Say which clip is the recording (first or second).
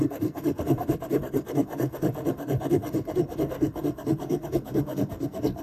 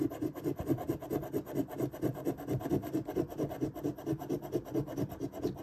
second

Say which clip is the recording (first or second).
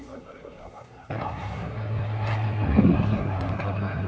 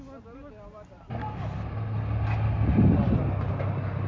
second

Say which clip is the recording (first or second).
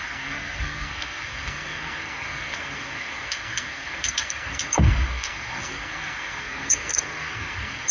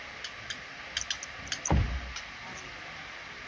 second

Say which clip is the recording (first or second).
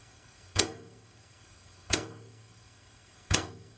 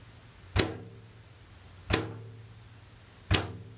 second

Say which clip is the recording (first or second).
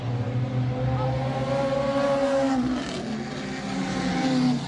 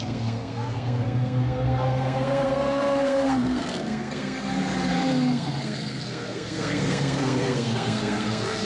first